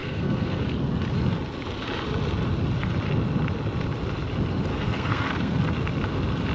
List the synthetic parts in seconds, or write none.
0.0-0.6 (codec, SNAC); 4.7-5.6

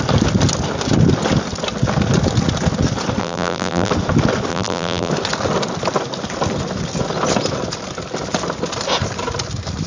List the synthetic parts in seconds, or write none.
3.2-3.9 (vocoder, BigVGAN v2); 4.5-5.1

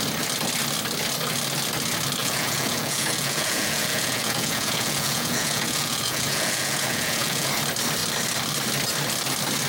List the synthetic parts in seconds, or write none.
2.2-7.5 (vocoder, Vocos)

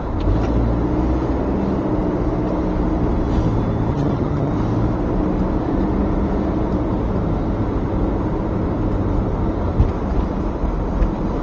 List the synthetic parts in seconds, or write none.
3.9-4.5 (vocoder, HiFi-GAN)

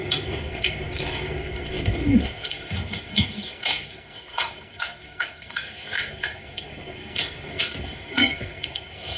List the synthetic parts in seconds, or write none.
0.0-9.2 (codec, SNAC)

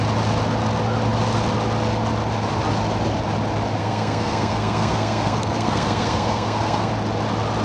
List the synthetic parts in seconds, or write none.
3.8-6.9 (codec, SNAC)

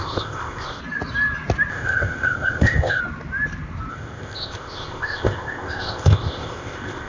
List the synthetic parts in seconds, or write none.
0.0-0.8 (codec, ZipCodec); 1.7-3.0; 3.9-7.1